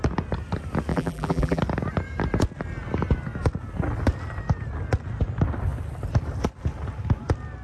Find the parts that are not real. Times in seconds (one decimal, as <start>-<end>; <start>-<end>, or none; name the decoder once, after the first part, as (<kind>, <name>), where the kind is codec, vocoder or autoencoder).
0.9-1.6 (vocoder, BigVGAN v2)